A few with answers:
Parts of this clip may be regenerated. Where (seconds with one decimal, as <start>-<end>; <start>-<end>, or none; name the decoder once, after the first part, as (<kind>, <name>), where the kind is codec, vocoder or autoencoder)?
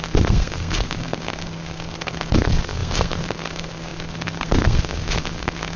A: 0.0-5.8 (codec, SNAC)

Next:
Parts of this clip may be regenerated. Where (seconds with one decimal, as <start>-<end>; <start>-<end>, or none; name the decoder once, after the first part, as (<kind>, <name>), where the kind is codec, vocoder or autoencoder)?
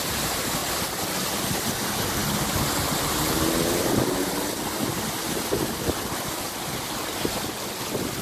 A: none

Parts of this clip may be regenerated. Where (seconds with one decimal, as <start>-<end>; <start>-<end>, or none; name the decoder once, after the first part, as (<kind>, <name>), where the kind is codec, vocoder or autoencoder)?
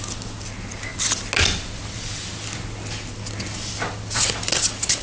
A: none